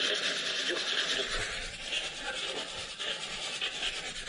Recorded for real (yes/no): yes